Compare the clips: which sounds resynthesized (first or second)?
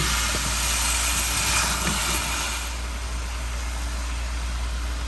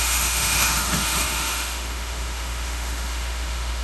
second